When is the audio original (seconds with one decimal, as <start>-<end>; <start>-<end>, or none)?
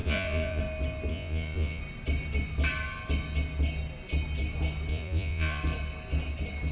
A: 0.6-1.1; 1.8-4.9; 5.6-6.7